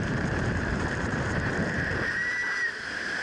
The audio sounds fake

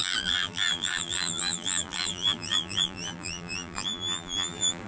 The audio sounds fake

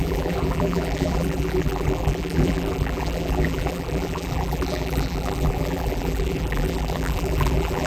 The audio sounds fake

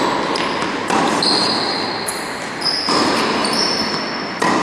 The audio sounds real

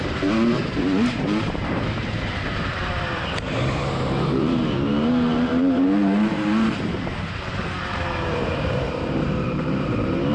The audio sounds fake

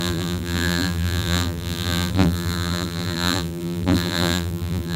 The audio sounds fake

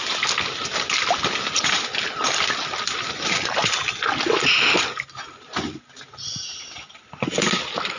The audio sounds real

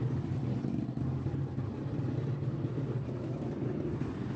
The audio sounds real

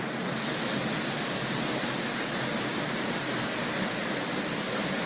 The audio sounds real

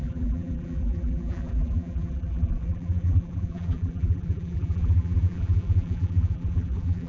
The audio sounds fake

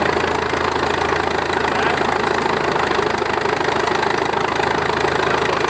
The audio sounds real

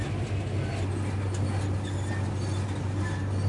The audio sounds real